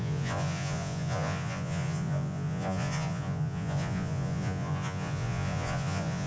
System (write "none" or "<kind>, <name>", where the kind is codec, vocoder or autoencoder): vocoder, Vocos